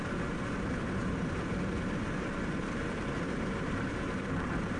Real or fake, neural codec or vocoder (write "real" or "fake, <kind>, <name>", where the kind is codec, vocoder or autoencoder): fake, vocoder, BigVGAN v2